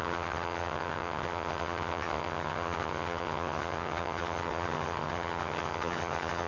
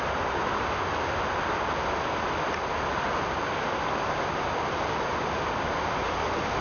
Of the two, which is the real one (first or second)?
second